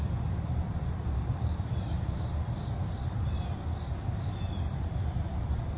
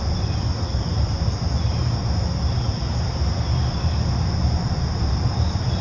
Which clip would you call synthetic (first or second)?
first